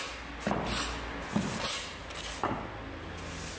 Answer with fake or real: real